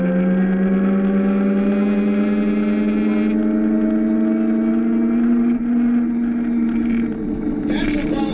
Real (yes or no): yes